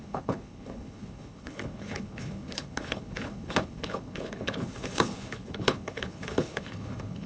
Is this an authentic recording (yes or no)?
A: no